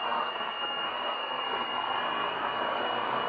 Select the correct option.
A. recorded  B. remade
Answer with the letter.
B